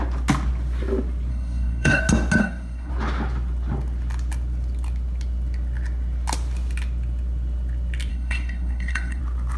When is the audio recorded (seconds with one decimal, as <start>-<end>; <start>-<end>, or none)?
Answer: 0.0-1.3; 2.0-2.4; 2.9-8.1; 9.2-9.6